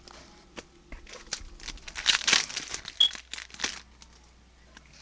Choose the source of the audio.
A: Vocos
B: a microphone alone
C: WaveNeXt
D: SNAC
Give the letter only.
B